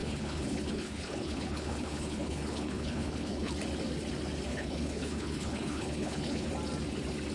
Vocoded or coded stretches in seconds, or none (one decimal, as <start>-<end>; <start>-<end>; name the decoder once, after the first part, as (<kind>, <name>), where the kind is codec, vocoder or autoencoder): 0.0-3.5 (codec, HILCodec); 4.5-6.5